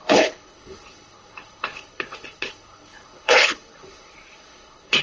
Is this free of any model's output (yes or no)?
no